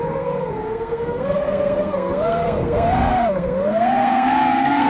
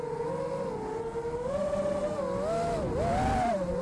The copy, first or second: first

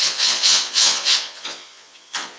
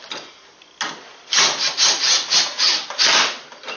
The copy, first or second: first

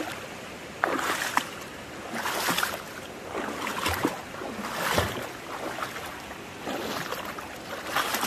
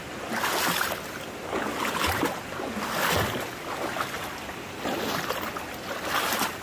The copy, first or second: second